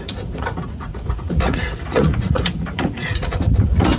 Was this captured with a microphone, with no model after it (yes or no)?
no